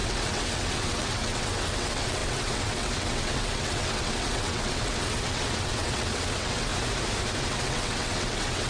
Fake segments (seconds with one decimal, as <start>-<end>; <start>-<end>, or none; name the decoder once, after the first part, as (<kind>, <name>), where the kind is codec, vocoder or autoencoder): 0.0-6.7 (vocoder, WaveNeXt); 7.4-8.7